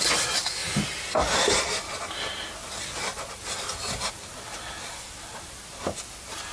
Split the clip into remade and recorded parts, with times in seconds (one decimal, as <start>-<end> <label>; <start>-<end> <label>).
0.0-6.5 recorded